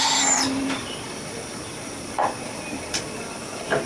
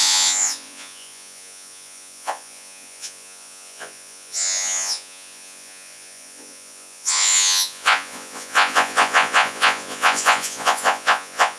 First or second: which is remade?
second